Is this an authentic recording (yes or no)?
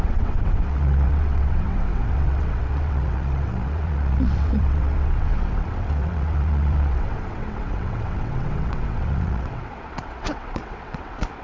no